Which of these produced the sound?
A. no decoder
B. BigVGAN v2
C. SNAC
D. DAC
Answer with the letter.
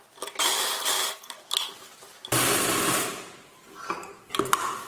A